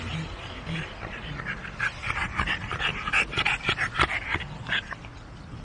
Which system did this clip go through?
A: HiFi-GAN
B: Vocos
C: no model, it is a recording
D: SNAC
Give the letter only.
C